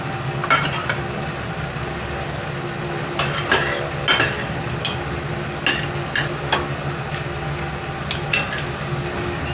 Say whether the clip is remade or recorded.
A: recorded